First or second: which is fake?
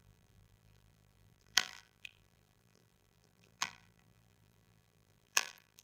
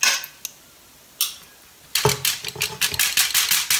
first